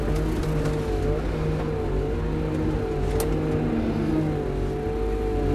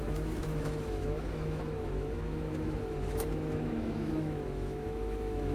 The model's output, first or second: second